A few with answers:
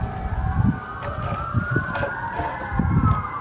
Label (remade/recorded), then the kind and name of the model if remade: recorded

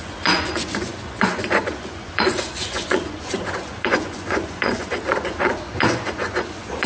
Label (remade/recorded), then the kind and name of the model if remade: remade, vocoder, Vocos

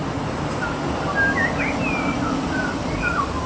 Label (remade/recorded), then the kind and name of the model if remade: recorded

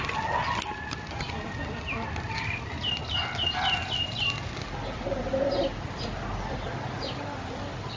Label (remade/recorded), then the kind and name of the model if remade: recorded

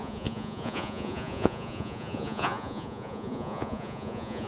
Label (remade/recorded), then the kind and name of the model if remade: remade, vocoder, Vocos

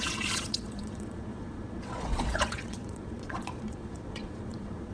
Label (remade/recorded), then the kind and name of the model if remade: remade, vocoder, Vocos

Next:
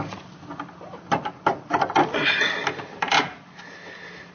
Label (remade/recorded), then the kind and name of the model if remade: recorded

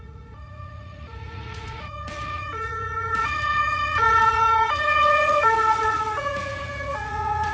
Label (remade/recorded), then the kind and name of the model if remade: remade, vocoder, Vocos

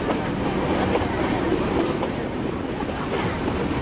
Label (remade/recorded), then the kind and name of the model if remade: recorded